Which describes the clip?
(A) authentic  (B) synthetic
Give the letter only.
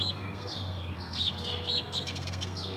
B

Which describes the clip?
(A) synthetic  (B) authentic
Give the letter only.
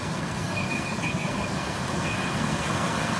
A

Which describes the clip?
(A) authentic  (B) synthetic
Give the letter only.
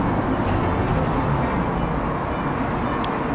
A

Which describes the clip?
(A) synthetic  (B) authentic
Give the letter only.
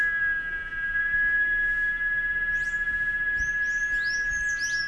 B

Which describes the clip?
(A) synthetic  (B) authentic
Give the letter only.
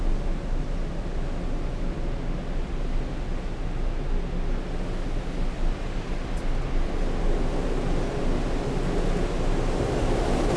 B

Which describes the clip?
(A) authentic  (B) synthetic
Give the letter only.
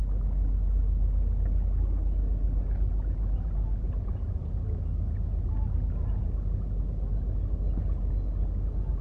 A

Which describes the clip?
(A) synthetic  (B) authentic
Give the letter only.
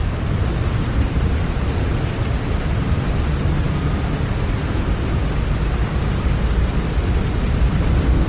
B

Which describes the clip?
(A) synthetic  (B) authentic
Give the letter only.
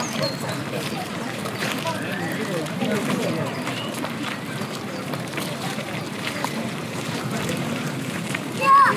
A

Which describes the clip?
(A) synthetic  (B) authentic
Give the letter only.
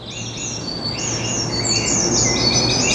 B